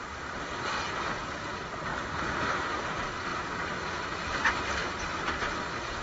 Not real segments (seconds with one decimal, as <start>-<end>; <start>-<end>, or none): 3.3-3.8; 4.8-6.0